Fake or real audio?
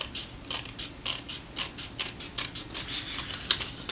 real